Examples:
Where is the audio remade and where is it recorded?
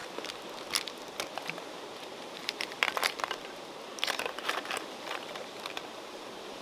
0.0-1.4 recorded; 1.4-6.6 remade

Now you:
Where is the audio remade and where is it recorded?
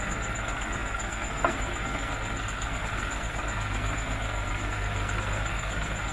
0.0-6.1 remade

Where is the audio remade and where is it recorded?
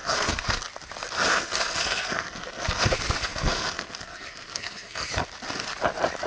0.0-0.6 remade; 0.6-1.3 recorded; 1.3-5.1 remade; 5.1-6.3 recorded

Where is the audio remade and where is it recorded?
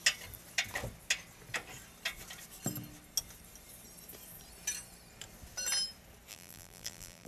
0.0-6.3 recorded; 6.3-7.3 remade